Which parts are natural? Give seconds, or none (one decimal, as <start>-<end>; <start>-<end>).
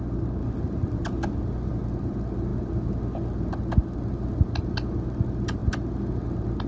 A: 0.0-6.7